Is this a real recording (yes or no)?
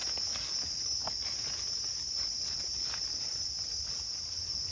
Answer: yes